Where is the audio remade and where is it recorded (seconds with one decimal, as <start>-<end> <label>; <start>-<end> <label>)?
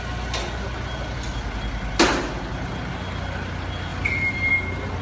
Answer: 0.0-3.9 recorded; 3.9-4.5 remade; 4.5-5.0 recorded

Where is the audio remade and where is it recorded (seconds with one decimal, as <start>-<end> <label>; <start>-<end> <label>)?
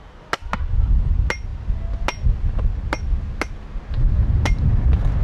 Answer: 0.0-5.2 recorded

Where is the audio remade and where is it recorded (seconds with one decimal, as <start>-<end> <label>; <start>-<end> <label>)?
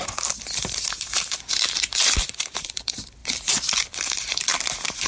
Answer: 0.0-5.1 remade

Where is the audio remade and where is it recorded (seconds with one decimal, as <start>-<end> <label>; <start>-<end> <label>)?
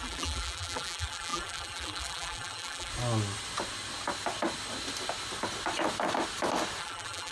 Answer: 0.0-2.9 remade; 2.9-6.8 recorded; 6.8-7.3 remade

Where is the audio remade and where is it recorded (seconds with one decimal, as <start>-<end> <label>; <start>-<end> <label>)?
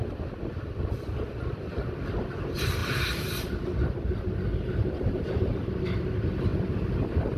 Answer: 0.0-2.8 recorded; 2.8-3.4 remade; 3.4-4.8 recorded; 4.8-5.5 remade; 5.5-7.4 recorded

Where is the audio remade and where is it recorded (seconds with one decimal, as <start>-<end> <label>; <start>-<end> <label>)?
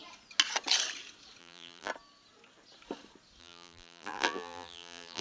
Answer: 0.0-1.4 recorded; 1.4-1.9 remade; 1.9-3.4 recorded; 3.4-5.2 remade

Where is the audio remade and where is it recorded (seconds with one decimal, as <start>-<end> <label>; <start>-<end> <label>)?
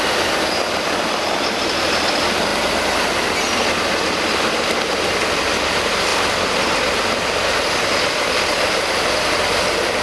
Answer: 0.0-10.0 recorded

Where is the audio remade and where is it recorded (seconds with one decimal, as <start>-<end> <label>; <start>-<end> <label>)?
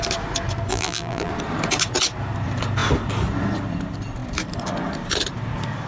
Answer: 0.0-0.7 recorded; 0.7-1.3 remade; 1.3-5.9 recorded